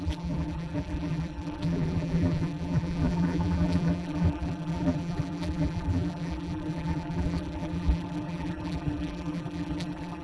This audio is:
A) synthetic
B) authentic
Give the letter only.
A